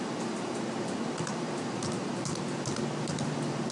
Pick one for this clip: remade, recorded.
recorded